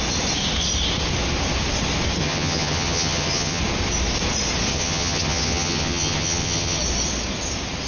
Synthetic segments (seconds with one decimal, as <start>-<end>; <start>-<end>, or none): 2.2-3.6; 4.7-6.8